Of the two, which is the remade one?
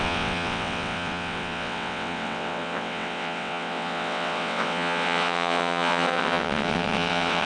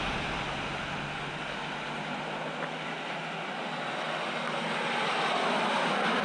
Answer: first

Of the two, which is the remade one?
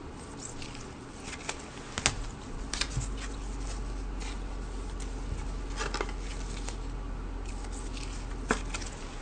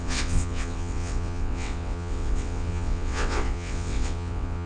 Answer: second